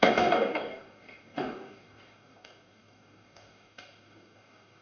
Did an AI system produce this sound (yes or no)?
yes